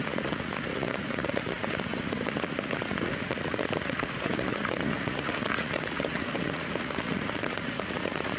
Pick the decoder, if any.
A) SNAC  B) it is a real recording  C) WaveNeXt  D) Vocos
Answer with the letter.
D